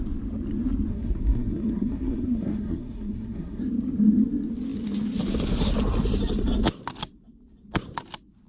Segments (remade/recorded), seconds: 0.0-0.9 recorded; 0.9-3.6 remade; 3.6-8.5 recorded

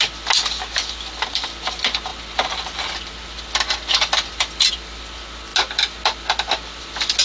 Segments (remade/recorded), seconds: 0.0-7.2 recorded

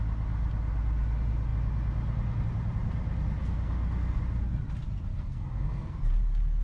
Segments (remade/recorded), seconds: 0.0-3.4 recorded; 3.4-4.2 remade; 4.2-5.1 recorded; 5.1-6.0 remade; 6.0-6.6 recorded

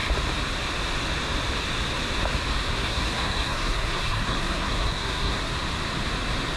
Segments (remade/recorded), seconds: 0.0-2.7 recorded; 2.7-5.5 remade; 5.5-6.6 recorded

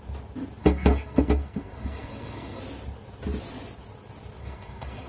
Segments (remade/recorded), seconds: 0.0-0.6 recorded; 0.6-2.6 remade; 2.6-4.4 recorded; 4.4-5.1 remade

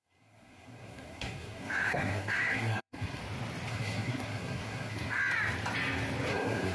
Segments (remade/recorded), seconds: 0.0-3.2 remade; 3.2-3.7 recorded; 3.7-5.2 remade; 5.2-6.3 recorded; 6.3-6.7 remade

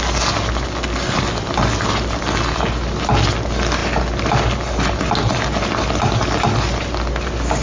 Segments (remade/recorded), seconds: 0.0-7.6 recorded